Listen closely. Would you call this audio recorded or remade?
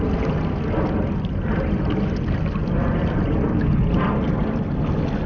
recorded